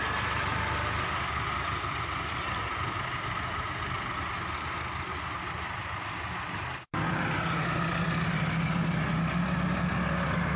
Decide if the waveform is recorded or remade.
recorded